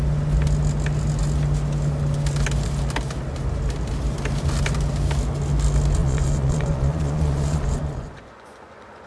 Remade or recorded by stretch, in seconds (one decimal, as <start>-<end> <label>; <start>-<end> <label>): 0.0-6.0 recorded; 6.0-9.1 remade